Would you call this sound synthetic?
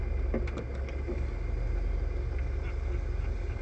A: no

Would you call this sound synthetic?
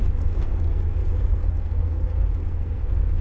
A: yes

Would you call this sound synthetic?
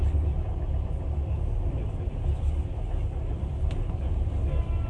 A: no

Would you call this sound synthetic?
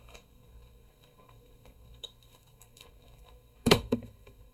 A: yes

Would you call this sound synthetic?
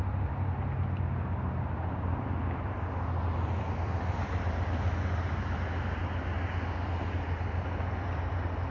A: no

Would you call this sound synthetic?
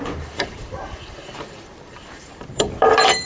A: yes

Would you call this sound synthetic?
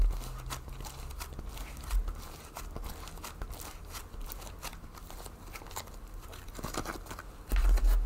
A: no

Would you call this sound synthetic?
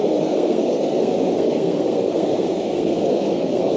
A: yes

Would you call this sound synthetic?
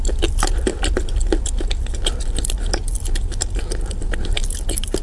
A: no